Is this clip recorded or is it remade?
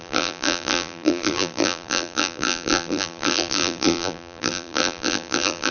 remade